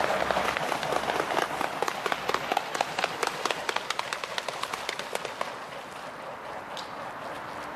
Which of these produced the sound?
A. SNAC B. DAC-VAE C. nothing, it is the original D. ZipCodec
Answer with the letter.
C